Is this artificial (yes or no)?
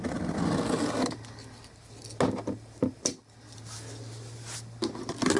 no